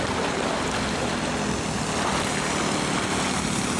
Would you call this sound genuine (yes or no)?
yes